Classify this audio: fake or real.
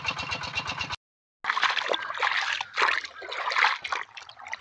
real